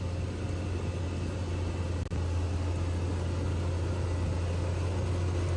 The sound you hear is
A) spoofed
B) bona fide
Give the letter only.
B